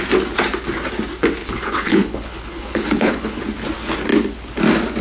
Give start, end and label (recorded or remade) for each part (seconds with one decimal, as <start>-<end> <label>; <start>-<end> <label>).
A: 0.0-1.4 recorded; 1.4-3.4 remade; 3.4-5.0 recorded